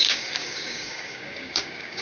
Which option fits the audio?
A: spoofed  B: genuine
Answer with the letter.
A